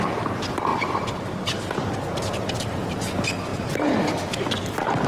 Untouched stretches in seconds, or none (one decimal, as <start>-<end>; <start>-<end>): 0.0-5.1